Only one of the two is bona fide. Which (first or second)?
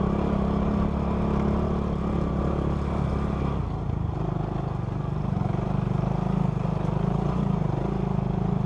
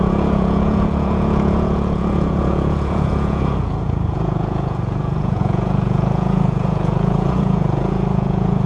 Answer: first